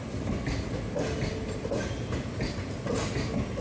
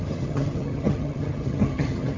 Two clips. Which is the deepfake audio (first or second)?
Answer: second